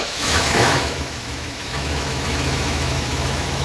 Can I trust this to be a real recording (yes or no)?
no